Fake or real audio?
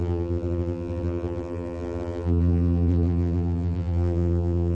fake